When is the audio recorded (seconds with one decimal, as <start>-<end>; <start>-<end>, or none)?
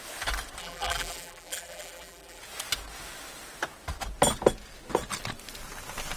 0.0-0.6; 2.4-6.2